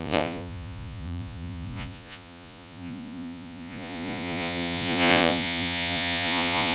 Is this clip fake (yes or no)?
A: yes